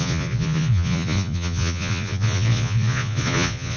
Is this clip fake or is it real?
fake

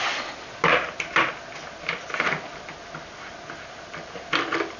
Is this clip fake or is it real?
real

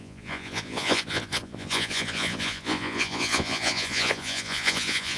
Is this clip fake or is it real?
fake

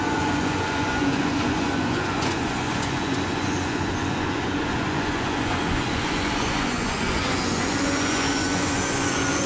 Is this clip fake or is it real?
fake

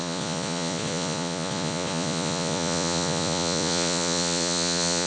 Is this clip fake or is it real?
fake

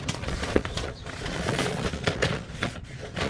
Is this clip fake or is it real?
fake